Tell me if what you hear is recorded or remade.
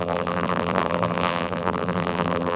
remade